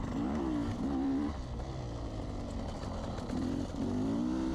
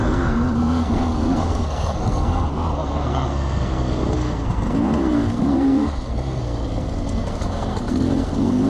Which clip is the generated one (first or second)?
second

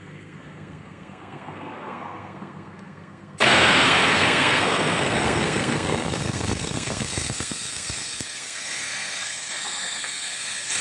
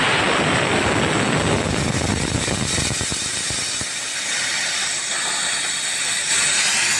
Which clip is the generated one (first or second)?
first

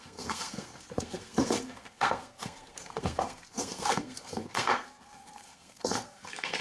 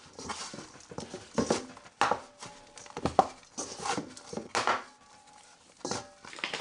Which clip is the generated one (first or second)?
first